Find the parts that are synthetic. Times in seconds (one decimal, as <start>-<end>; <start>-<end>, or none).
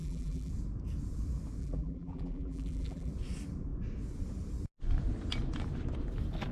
0.0-0.5; 1.6-3.1